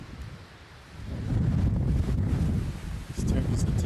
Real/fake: real